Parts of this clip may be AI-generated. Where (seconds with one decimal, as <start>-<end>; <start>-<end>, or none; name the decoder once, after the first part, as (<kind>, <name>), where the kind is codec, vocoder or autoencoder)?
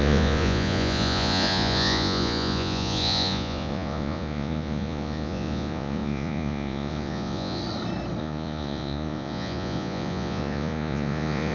0.0-7.6 (vocoder, Vocos); 8.2-11.5